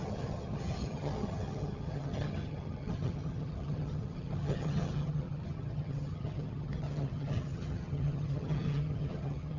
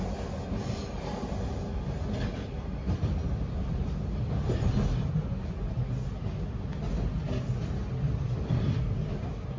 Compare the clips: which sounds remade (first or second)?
first